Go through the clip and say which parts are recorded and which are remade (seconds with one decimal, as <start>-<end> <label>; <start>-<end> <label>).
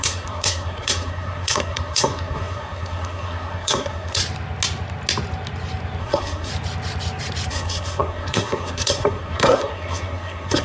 0.0-4.2 remade; 4.2-6.0 recorded; 6.0-6.5 remade; 6.5-7.5 recorded; 7.5-10.6 remade